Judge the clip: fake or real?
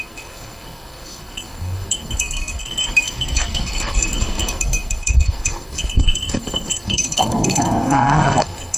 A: fake